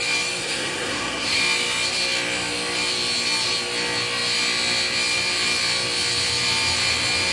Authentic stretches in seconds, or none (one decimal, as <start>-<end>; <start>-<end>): 0.0-0.4; 1.4-7.3